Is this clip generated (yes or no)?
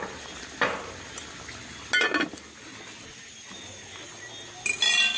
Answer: no